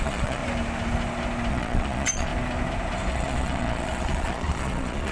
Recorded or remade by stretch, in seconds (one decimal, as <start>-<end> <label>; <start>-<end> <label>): 0.0-0.4 remade; 0.4-1.5 recorded; 1.5-2.3 remade; 2.3-3.1 recorded; 3.1-5.1 remade